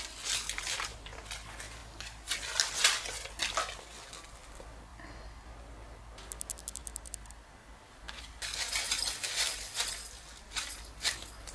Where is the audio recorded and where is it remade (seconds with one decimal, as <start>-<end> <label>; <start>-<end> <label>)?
0.0-11.5 recorded